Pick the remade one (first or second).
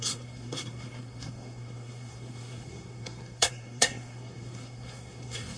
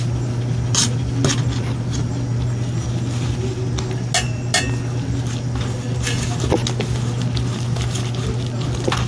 first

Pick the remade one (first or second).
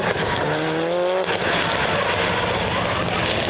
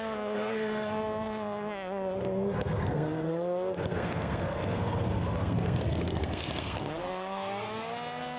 second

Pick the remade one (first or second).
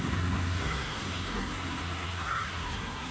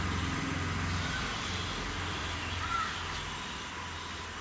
first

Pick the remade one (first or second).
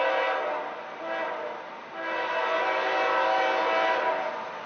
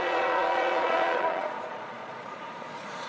second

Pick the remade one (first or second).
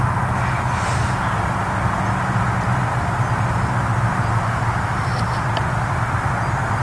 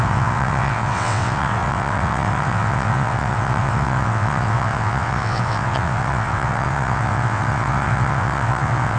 second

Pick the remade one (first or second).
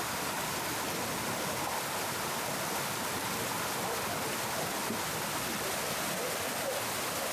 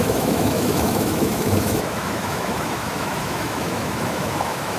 second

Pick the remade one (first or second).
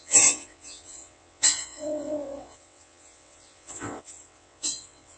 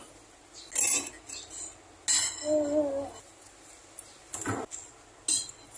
first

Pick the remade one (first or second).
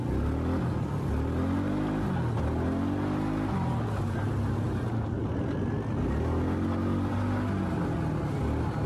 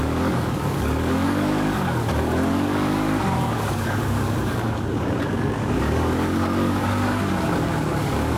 second